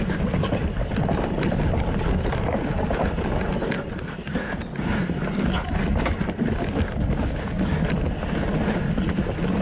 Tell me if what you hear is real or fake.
real